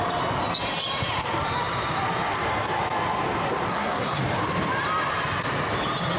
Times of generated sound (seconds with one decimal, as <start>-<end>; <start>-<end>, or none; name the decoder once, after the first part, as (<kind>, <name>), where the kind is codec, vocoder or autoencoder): 3.7-4.2 (codec, SNAC)